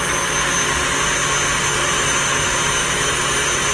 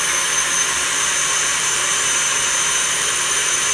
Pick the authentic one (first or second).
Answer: first